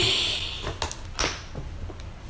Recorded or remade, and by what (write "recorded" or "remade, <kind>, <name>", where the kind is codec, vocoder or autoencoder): recorded